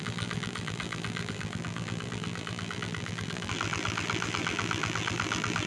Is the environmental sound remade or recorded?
remade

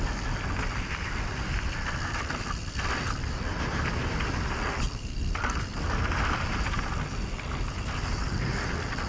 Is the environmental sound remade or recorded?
remade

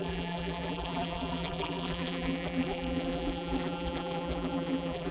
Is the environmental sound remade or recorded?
remade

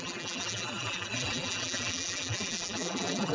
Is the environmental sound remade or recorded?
remade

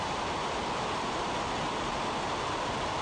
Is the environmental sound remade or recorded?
recorded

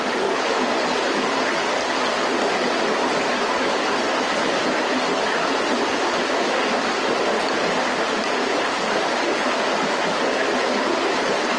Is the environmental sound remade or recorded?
recorded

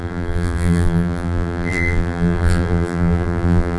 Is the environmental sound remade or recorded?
remade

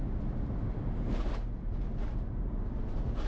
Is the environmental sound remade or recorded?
recorded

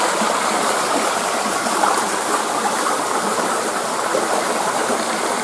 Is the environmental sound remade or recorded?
recorded